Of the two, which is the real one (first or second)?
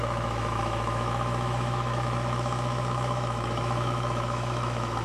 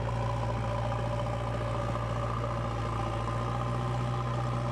second